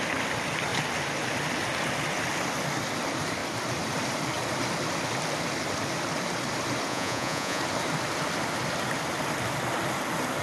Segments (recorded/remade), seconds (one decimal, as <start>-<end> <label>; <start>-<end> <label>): 0.0-6.9 recorded; 6.9-7.6 remade; 7.6-10.4 recorded